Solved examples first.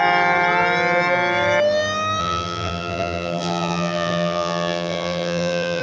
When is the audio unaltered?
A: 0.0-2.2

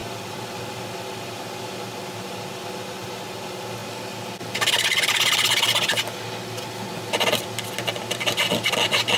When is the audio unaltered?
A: 0.0-9.2

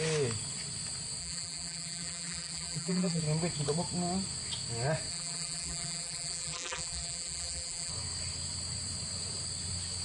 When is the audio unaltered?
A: 0.0-1.2; 3.2-5.1; 7.9-10.0

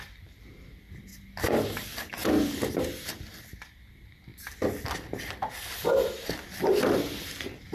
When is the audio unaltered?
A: 1.1-2.5; 4.3-5.5

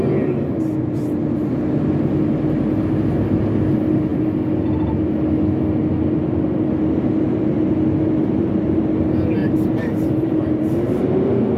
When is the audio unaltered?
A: 0.0-8.2; 8.8-9.4; 11.0-11.6

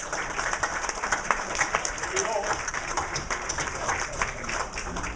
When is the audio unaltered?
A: none

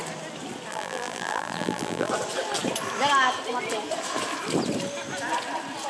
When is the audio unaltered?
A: 0.0-0.7; 2.1-5.9

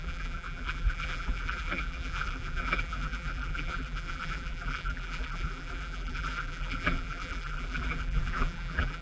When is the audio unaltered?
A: none